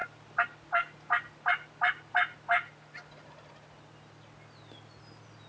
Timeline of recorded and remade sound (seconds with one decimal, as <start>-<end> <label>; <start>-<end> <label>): 0.0-5.5 recorded